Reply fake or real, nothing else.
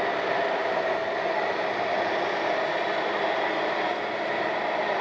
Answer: real